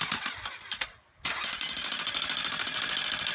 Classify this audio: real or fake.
real